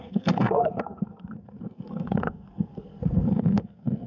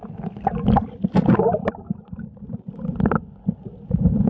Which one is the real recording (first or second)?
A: second